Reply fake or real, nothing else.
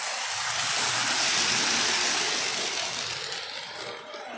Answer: real